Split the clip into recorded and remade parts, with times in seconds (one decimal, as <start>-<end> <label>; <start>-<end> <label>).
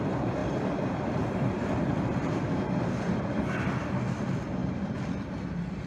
0.0-0.4 remade; 0.4-3.9 recorded; 3.9-4.6 remade; 4.6-5.9 recorded